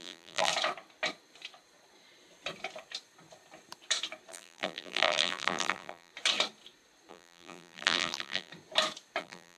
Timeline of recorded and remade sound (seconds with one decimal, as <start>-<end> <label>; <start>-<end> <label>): 0.0-0.5 remade; 0.5-4.3 recorded; 4.3-6.1 remade; 6.1-7.1 recorded; 7.1-8.5 remade; 8.5-9.2 recorded; 9.2-9.6 remade